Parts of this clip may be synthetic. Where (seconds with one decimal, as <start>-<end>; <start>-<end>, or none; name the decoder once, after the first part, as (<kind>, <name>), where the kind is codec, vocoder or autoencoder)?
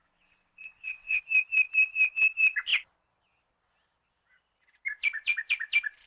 0.0-1.2 (vocoder, WaveNeXt)